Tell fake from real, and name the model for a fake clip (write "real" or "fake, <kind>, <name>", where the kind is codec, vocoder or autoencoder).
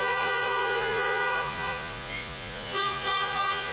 fake, vocoder, Vocos